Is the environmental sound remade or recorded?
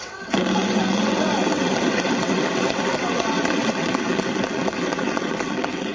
remade